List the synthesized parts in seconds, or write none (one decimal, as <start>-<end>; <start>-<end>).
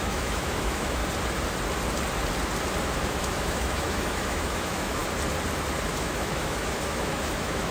0.0-1.0; 3.2-5.0; 5.9-7.7